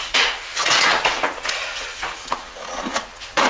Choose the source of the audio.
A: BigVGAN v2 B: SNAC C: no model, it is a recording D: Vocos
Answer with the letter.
D